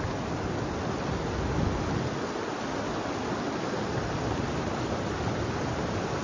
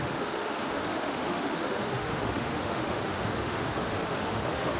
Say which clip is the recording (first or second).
first